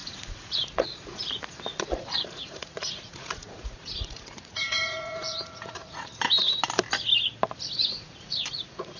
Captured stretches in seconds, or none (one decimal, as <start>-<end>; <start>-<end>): 6.1-7.8